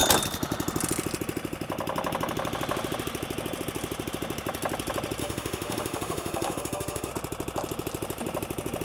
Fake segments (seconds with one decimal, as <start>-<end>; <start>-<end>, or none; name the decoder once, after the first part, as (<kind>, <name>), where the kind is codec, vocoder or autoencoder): 5.2-7.1 (autoencoder, DAC-VAE)